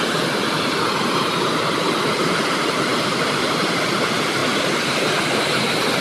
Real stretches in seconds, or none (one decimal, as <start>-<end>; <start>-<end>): 0.0-6.0